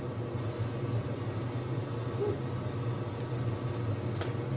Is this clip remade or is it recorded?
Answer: recorded